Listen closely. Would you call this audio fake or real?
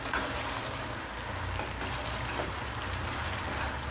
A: real